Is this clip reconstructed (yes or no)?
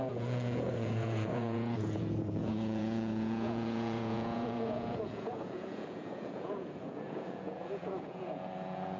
yes